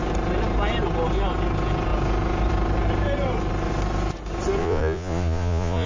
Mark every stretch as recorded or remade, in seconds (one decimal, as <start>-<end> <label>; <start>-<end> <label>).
0.0-4.6 recorded; 4.6-5.9 remade